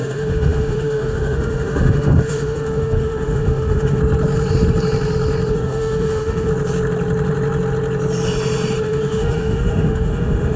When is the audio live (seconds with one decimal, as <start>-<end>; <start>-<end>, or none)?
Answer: 4.0-5.5; 6.5-8.8